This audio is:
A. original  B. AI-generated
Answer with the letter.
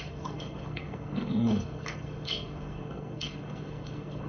B